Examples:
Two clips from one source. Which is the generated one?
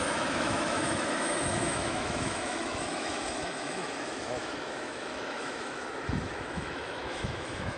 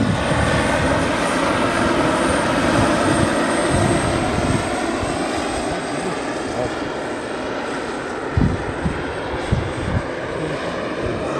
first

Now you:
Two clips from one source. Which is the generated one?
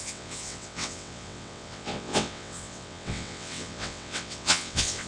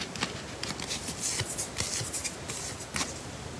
first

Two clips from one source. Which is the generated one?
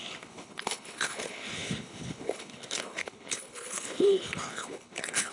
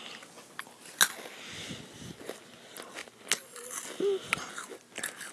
first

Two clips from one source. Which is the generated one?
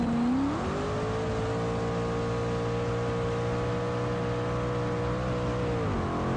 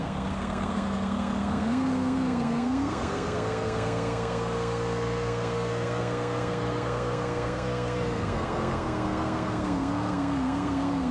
second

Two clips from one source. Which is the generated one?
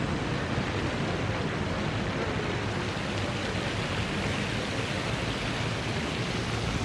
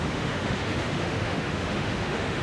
second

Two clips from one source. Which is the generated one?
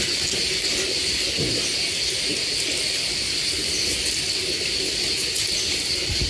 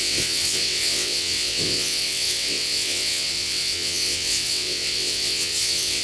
second